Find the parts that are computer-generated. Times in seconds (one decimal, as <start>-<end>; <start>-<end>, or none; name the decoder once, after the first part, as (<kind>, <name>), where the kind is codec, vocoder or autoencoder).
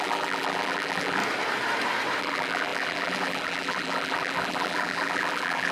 0.0-1.2 (vocoder, BigVGAN v2); 2.2-5.7